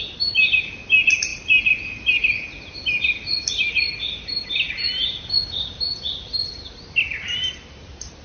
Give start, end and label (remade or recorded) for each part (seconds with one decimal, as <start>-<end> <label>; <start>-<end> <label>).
0.0-8.2 recorded